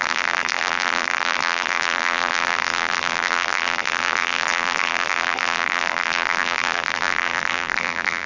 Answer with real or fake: fake